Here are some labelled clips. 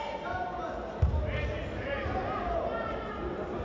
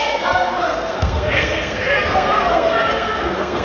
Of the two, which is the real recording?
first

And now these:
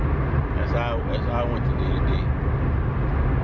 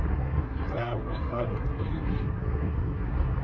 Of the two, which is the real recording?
first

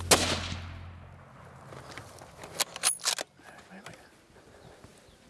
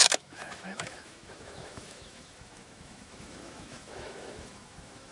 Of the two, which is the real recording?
first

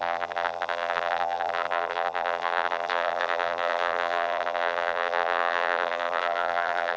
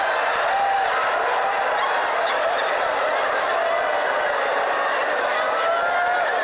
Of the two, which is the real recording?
second